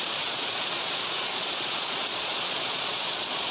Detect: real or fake fake